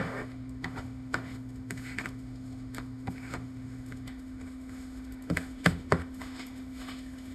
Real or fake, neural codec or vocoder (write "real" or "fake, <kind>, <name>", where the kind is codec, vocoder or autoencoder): fake, autoencoder, DAC-VAE